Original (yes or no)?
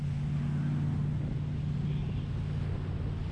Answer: yes